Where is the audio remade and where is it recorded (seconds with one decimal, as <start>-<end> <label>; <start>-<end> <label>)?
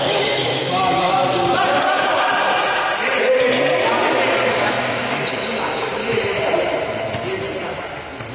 0.0-1.2 remade; 1.2-1.7 recorded; 1.7-2.3 remade; 2.3-4.5 recorded; 4.5-6.0 remade; 6.0-8.3 recorded